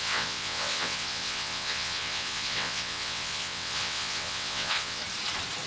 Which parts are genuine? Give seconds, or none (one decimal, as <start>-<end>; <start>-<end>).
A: 5.0-5.7